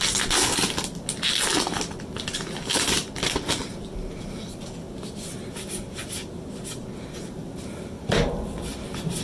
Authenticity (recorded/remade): recorded